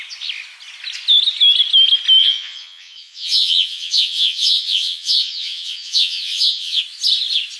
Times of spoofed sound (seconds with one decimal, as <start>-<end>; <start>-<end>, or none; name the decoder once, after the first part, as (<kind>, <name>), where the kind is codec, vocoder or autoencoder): 2.2-6.8 (vocoder, Vocos)